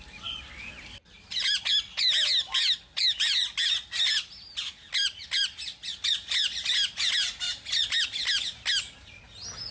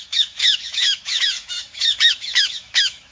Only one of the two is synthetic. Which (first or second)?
second